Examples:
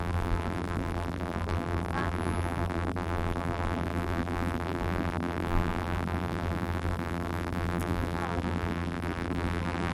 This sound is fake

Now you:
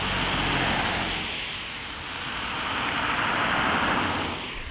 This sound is real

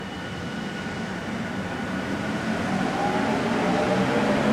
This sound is real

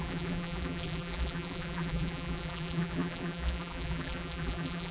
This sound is fake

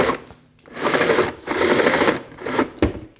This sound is fake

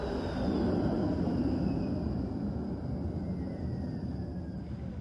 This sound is real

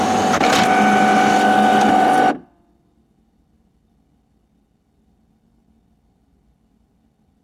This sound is real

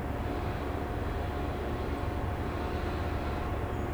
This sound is real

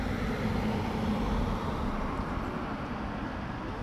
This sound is real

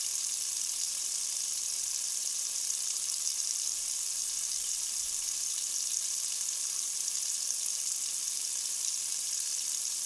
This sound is fake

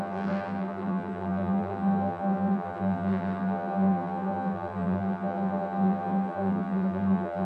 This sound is fake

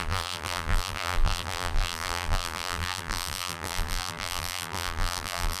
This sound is fake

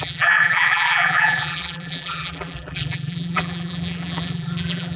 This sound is fake